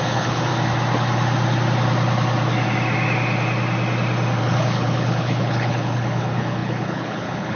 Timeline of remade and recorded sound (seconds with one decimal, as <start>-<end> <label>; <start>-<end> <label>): 0.0-0.5 remade; 0.5-4.4 recorded; 4.4-7.5 remade